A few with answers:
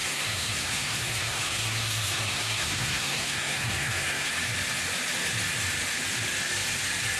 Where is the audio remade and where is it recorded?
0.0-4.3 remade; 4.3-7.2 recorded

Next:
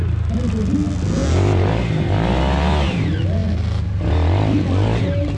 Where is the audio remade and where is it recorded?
0.0-5.4 recorded

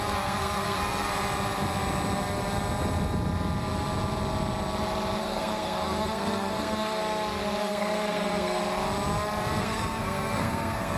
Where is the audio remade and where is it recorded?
0.0-1.1 remade; 1.1-5.2 recorded; 5.2-7.0 remade; 7.0-7.6 recorded; 7.6-8.6 remade; 8.6-9.6 recorded; 9.6-11.0 remade

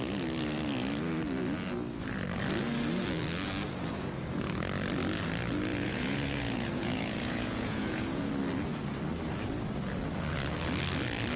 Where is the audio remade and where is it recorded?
0.0-5.7 recorded; 5.7-8.3 remade; 8.3-11.4 recorded

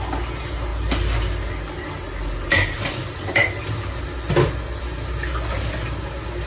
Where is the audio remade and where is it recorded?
0.0-6.5 recorded

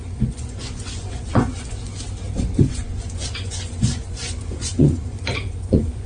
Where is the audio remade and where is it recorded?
0.0-1.9 remade; 1.9-2.4 recorded; 2.4-6.1 remade

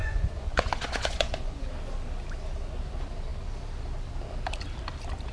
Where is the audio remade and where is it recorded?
0.0-1.6 remade; 1.6-5.3 recorded

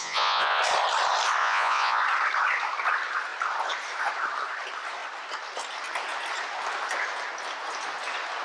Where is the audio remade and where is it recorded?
0.0-0.6 remade; 0.6-1.4 recorded; 1.4-2.0 remade; 2.0-8.4 recorded